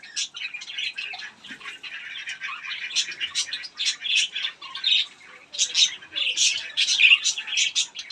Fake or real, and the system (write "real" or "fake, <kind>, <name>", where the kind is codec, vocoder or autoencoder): real